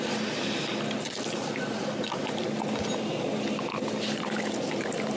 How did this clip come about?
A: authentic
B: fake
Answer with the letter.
A